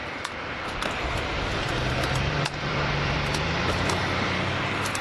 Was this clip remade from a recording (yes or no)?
yes